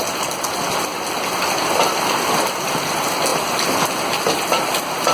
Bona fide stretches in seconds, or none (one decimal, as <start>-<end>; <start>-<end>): 0.0-5.1